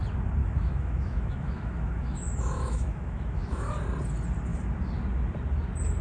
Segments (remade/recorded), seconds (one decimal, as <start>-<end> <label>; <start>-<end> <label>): 0.0-0.4 recorded; 0.4-3.7 remade; 3.7-6.0 recorded